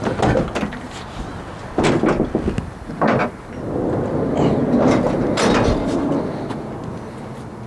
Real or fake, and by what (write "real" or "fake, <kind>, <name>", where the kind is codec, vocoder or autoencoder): real